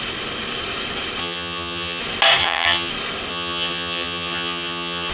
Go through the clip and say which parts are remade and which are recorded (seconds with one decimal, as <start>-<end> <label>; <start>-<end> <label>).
0.0-1.2 recorded; 1.2-2.0 remade; 2.0-2.4 recorded; 2.4-2.9 remade; 2.9-3.3 recorded; 3.3-5.1 remade